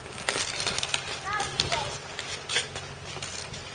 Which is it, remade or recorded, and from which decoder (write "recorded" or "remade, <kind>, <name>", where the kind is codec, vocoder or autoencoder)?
recorded